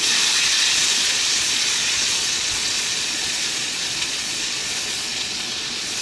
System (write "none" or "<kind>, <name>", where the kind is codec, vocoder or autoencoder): vocoder, Vocos